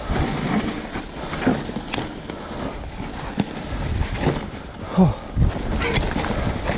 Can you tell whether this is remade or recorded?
recorded